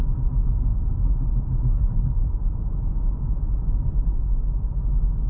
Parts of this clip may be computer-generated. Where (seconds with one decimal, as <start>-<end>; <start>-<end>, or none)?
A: none